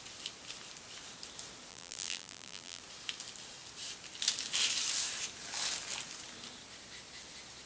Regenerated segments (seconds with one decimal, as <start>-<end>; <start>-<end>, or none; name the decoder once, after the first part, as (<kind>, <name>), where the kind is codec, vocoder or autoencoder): 1.7-2.8 (vocoder, BigVGAN v2)